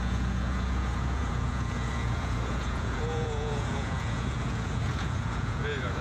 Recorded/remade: remade